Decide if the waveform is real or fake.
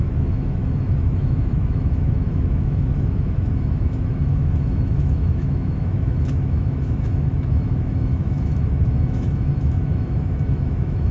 fake